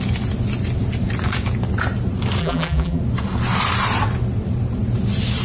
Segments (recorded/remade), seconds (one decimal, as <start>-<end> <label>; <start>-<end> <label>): 0.0-2.4 recorded; 2.4-3.0 remade; 3.0-5.4 recorded